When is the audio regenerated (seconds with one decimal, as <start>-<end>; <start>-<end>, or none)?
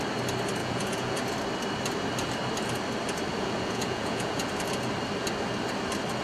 0.6-1.2; 3.3-4.5